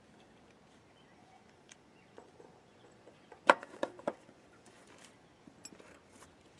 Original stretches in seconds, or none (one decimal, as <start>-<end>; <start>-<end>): 0.0-1.2; 4.9-6.6